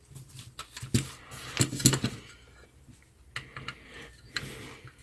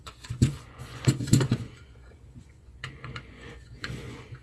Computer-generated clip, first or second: second